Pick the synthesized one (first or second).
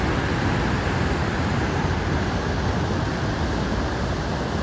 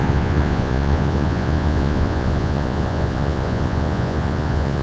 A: second